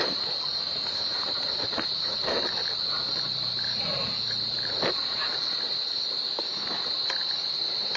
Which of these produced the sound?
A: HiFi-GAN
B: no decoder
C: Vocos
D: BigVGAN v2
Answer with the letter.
D